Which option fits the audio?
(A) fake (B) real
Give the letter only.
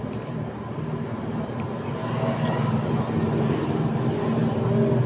B